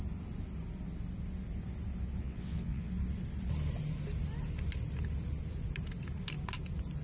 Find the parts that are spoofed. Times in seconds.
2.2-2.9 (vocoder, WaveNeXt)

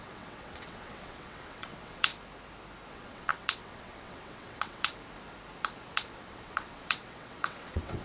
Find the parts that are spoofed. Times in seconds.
0.0-2.1 (vocoder, WaveNeXt); 2.9-4.9; 5.9-8.0

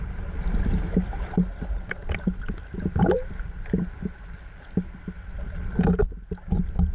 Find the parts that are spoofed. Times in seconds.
none

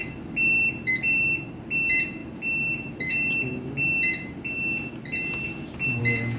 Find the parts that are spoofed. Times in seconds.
none

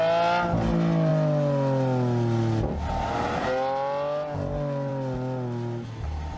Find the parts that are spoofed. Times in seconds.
none

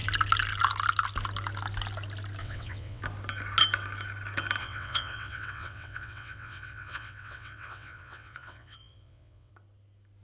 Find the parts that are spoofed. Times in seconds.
2.4-3.0 (vocoder, WaveNeXt); 4.6-9.5